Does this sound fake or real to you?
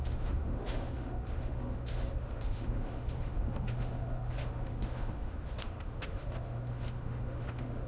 fake